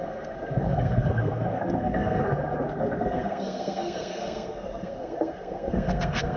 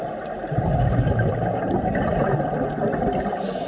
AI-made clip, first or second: first